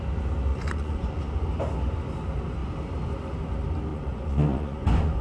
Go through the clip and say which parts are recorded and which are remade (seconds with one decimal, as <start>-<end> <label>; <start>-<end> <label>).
0.0-0.5 recorded; 0.5-1.2 remade; 1.2-3.9 recorded; 3.9-5.2 remade